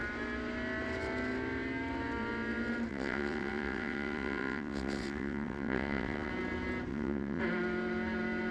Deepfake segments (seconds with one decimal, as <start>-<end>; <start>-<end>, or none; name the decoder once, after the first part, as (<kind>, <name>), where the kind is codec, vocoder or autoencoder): 2.9-6.3 (vocoder, WaveNeXt); 6.9-7.4